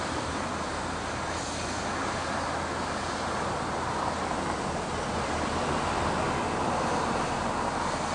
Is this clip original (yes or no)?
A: yes